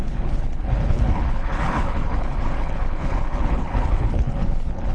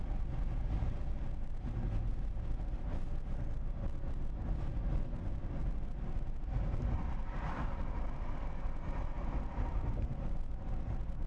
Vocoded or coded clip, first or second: first